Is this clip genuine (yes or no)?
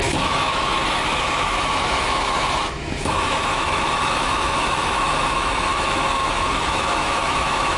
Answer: no